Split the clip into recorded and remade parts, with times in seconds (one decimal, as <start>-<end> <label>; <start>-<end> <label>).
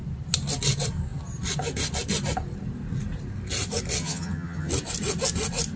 0.0-4.0 recorded; 4.0-4.7 remade; 4.7-5.8 recorded